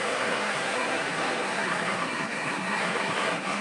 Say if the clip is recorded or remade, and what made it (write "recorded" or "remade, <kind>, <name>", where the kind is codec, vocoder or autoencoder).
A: remade, codec, SNAC